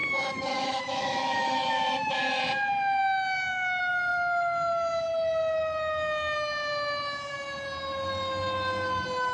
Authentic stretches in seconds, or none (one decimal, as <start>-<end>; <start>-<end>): 2.4-9.3